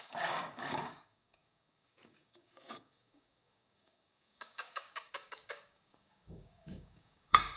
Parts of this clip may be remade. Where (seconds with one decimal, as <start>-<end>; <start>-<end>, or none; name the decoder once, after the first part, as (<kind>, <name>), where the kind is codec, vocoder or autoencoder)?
0.0-7.6 (codec, DAC)